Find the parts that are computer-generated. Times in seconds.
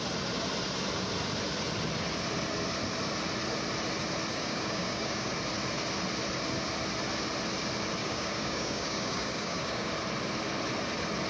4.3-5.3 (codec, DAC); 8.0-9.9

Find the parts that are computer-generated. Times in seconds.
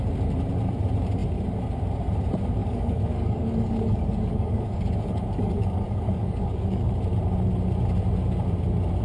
2.6-6.9 (codec, DAC)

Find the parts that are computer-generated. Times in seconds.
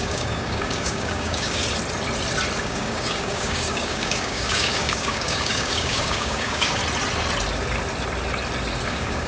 0.0-1.6 (codec, DAC); 2.6-6.8; 8.9-9.3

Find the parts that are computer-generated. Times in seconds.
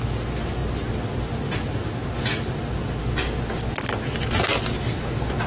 none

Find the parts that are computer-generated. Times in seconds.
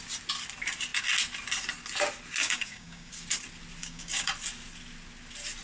2.4-3.1 (codec, DAC); 3.8-4.3